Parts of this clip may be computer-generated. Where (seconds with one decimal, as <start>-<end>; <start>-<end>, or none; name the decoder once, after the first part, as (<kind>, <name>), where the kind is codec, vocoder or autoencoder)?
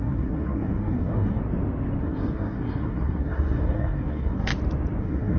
0.0-1.4 (codec, SNAC); 2.0-4.5; 5.0-5.4